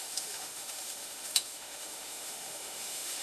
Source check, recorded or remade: remade